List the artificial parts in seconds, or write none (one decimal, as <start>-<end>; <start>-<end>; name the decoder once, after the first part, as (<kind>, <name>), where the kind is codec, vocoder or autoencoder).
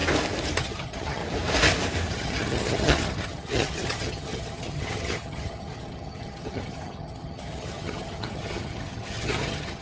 0.6-1.2 (vocoder, HiFi-GAN); 2.1-9.8